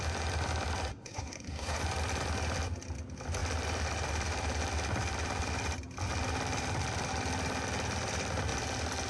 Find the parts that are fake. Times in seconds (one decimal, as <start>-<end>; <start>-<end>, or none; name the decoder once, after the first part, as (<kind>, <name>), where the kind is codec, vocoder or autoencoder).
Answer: 0.9-1.8 (codec, SNAC)